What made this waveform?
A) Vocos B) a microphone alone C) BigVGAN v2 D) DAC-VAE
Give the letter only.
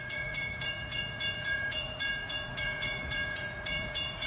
A